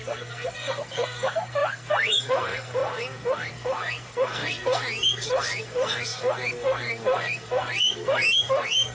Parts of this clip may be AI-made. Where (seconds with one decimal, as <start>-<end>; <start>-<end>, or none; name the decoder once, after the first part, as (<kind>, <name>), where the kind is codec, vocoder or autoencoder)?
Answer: 0.0-8.9 (codec, SNAC)